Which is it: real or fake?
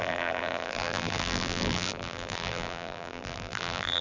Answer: fake